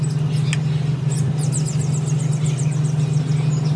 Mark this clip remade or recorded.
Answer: recorded